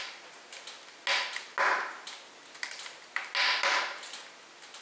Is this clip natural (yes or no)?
yes